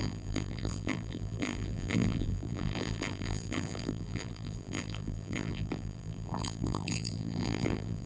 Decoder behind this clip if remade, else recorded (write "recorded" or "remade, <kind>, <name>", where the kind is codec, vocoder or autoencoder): remade, vocoder, BigVGAN v2